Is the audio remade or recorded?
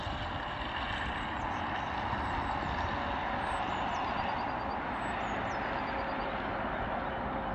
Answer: recorded